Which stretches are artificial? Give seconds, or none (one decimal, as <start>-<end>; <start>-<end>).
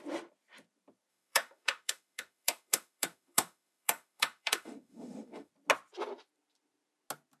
1.1-5.5